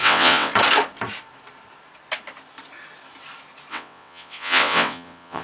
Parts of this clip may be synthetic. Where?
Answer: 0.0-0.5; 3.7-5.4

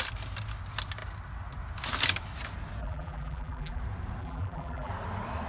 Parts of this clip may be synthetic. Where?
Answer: 2.8-3.8; 4.2-4.9